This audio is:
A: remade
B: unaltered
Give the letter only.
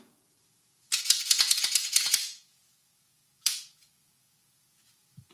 A